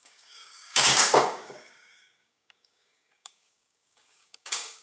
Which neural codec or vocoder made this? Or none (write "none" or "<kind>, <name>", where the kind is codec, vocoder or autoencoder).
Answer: codec, DAC